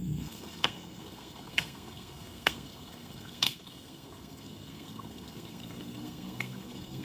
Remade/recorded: remade